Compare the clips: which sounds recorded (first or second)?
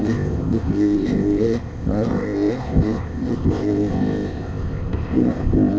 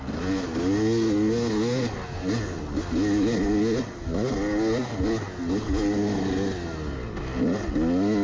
second